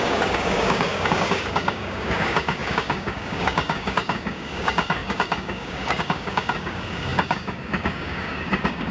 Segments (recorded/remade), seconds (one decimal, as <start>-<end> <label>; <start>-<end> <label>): 0.0-8.9 remade